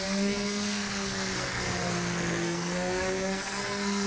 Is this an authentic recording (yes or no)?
no